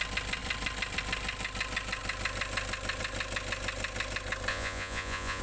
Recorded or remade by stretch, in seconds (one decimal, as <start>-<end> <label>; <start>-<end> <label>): 0.0-4.5 recorded; 4.5-5.4 remade